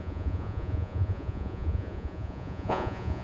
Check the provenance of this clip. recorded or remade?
remade